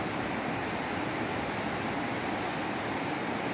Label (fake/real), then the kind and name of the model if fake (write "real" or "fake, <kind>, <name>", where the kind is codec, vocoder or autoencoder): real